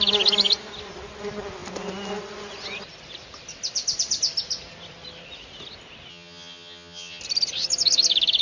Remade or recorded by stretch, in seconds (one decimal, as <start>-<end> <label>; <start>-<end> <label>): 0.0-6.1 recorded; 6.1-7.2 remade; 7.2-8.4 recorded